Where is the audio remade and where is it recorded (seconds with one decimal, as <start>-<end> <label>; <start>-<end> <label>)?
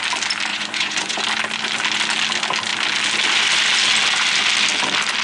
0.0-0.5 recorded; 0.5-1.2 remade; 1.2-5.2 recorded